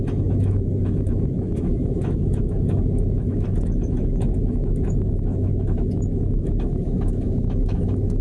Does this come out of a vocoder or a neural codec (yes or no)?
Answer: yes